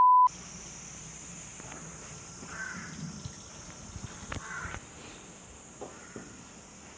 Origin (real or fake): real